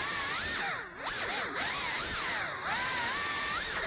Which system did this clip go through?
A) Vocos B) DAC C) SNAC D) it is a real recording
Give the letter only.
D